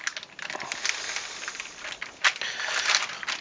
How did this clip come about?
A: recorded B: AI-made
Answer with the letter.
A